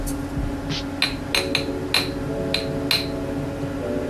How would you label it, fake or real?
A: real